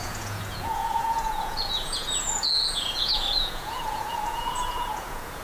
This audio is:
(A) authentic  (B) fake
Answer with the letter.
B